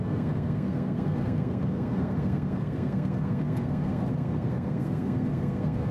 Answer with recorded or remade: remade